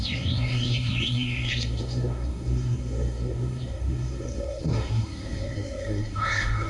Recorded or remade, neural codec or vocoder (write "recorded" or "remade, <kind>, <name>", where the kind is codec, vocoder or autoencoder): remade, codec, SNAC